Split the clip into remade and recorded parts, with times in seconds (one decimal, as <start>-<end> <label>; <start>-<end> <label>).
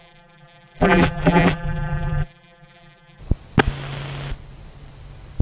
0.0-3.2 remade; 3.2-5.4 recorded